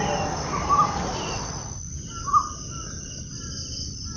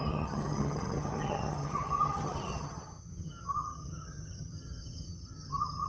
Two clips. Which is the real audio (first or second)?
first